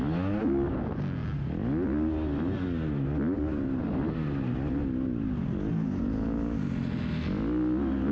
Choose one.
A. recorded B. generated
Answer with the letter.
A